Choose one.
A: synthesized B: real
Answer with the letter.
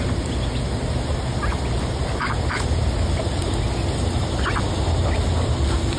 B